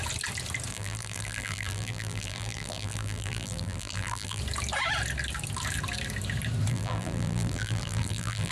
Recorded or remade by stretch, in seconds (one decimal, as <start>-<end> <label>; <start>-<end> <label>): 0.0-0.7 recorded; 0.7-4.4 remade; 4.4-6.7 recorded; 6.7-8.5 remade